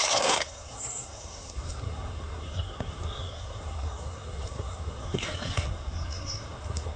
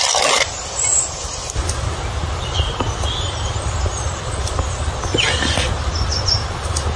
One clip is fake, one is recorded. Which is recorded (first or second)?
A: second